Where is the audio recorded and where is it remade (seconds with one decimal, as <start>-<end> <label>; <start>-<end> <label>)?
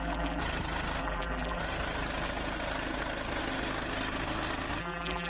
0.0-0.4 remade; 0.4-1.0 recorded; 1.0-1.6 remade; 1.6-4.8 recorded; 4.8-5.3 remade